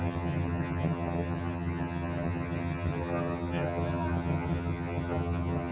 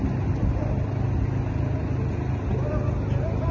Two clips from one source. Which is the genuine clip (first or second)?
second